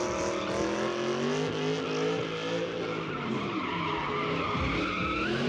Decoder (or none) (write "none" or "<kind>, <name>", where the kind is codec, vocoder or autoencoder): none